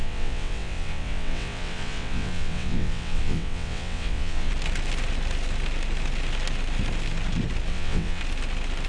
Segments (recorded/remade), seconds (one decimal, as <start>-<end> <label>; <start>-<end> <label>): 0.0-4.5 remade; 4.5-7.7 recorded; 7.7-8.2 remade; 8.2-8.9 recorded